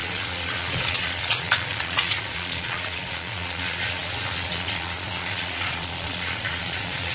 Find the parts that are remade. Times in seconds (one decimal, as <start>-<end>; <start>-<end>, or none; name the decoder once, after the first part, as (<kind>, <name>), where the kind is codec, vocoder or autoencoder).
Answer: 0.0-7.1 (vocoder, Vocos)